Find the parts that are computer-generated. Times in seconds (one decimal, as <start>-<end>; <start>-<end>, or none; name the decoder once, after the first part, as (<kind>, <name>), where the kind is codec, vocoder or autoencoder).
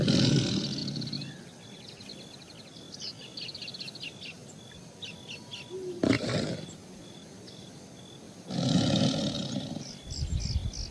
0.8-1.4 (vocoder, BigVGAN v2); 9.4-10.4